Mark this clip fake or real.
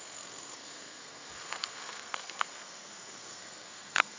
fake